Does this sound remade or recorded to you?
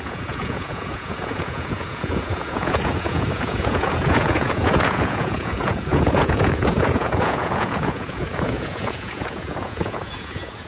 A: remade